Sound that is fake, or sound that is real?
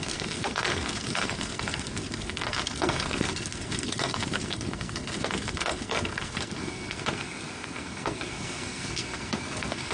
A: fake